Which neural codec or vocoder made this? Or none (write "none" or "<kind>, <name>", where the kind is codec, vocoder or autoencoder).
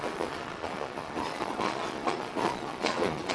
vocoder, Vocos